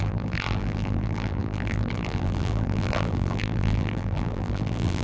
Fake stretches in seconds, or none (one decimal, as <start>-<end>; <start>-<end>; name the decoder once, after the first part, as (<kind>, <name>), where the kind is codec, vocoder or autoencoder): 0.0-5.0 (vocoder, BigVGAN v2)